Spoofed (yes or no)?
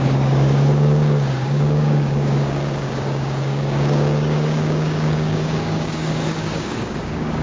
yes